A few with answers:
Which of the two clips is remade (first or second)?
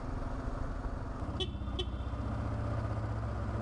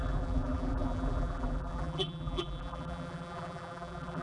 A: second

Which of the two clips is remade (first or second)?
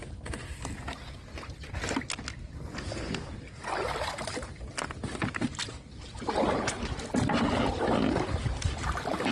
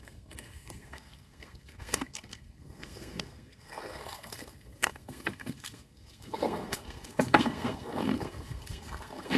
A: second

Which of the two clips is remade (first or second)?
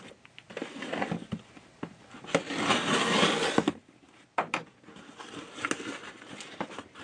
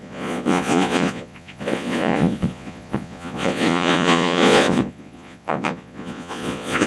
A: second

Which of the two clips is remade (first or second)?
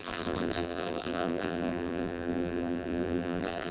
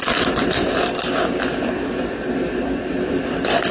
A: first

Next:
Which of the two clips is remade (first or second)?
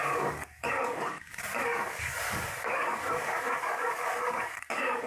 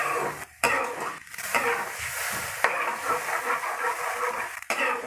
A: first